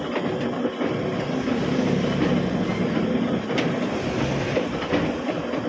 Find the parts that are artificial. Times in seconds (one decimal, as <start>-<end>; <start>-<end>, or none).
none

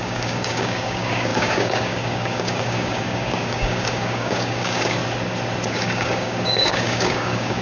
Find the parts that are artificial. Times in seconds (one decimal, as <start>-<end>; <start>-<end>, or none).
0.0-5.0; 5.7-7.6